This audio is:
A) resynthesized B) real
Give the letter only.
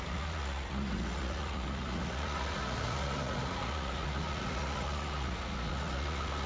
A